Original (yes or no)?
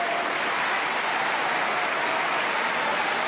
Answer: yes